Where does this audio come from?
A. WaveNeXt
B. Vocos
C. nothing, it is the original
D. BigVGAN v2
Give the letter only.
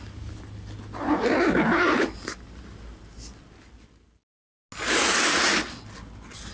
C